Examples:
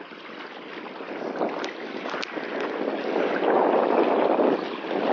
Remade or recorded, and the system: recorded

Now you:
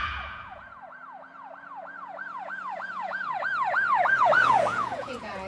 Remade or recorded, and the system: remade, vocoder, Vocos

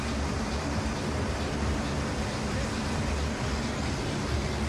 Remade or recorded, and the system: recorded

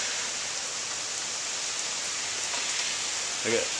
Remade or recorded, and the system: recorded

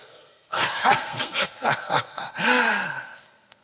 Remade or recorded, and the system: remade, codec, SNAC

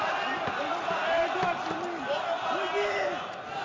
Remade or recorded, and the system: recorded